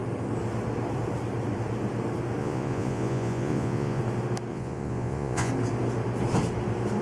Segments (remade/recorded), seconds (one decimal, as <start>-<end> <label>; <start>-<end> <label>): 0.0-2.4 recorded; 2.4-4.0 remade; 4.0-4.5 recorded; 4.5-5.5 remade; 5.5-7.0 recorded